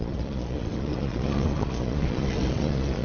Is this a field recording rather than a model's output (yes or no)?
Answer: no